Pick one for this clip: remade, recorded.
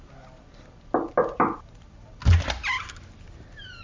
recorded